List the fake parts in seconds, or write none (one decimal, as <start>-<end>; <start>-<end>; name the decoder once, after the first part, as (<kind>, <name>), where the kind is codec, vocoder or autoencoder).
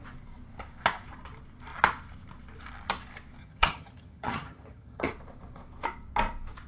3.4-5.1 (vocoder, HiFi-GAN)